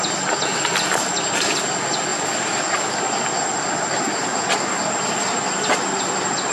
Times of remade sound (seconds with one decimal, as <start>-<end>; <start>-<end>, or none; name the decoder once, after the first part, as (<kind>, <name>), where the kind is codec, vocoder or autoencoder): none